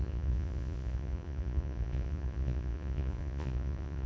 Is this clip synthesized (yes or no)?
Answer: yes